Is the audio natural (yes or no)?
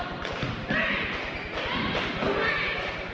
no